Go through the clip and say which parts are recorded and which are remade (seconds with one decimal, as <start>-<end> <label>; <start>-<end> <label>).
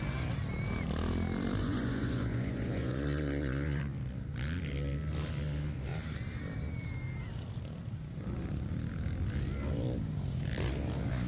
0.0-1.6 recorded; 1.6-3.8 remade; 3.8-11.3 recorded